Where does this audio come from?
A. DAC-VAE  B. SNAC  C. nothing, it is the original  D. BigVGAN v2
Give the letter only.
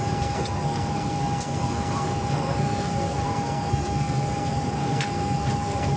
B